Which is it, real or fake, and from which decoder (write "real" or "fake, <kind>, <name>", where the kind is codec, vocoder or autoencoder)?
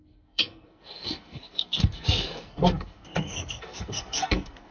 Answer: fake, codec, SNAC